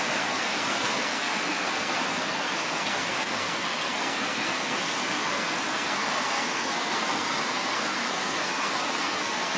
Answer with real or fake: fake